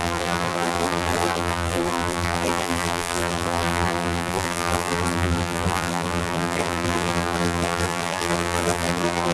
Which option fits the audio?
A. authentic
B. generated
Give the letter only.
B